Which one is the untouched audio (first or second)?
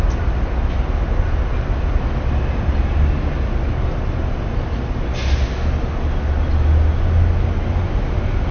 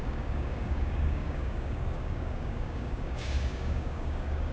first